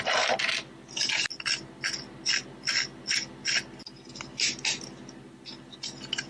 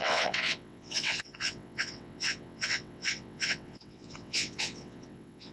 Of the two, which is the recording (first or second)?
first